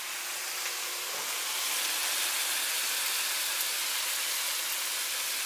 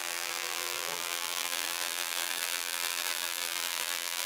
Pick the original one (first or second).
first